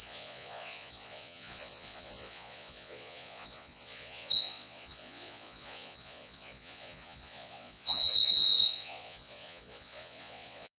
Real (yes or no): no